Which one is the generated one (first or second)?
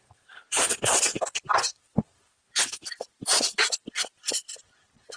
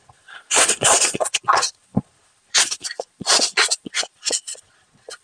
second